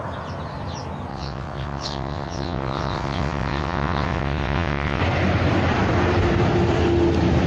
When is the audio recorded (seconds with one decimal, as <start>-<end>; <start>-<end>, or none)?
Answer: 0.0-1.1; 5.0-7.5